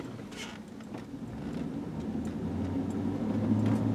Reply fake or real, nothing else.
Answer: real